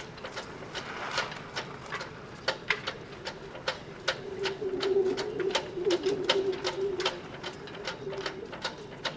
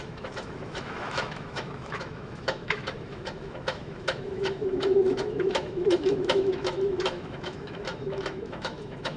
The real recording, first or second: first